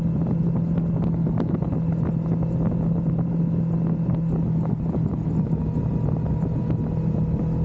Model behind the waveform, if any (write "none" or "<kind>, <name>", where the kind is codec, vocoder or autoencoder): none